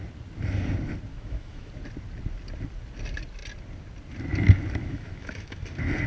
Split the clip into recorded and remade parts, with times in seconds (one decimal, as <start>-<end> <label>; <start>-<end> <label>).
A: 0.0-1.1 recorded; 1.1-1.7 remade; 1.7-4.8 recorded; 4.8-5.6 remade; 5.6-6.1 recorded

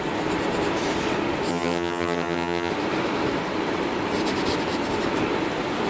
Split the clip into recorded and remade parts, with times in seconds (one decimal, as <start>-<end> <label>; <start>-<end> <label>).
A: 0.0-1.5 recorded; 1.5-2.7 remade; 2.7-5.9 recorded

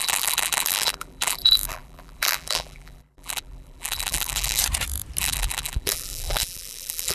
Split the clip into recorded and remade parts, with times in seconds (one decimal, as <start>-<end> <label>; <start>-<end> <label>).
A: 0.0-4.6 remade; 4.6-5.2 recorded; 5.2-7.1 remade

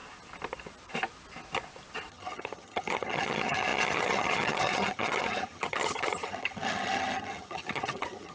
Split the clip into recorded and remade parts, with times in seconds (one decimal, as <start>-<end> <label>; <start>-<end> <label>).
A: 0.0-2.1 recorded; 2.1-8.3 remade